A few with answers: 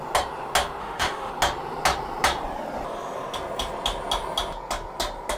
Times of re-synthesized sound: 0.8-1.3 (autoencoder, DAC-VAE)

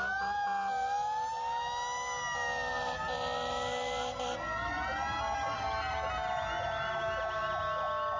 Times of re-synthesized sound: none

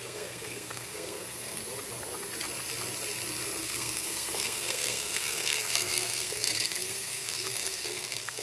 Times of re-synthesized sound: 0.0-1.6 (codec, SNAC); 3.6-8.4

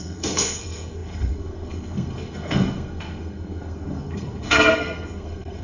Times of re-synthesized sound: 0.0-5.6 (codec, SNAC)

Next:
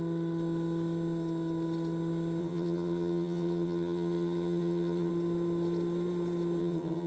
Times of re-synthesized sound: 2.4-5.1 (vocoder, HiFi-GAN); 6.6-7.1

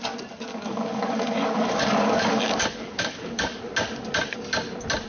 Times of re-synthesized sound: 0.5-3.6 (codec, DAC)